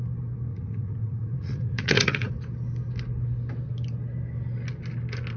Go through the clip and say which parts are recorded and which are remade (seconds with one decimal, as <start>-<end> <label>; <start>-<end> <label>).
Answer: 0.0-0.5 recorded; 0.5-2.3 remade; 2.3-5.4 recorded